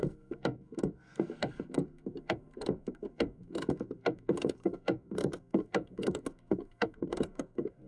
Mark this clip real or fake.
fake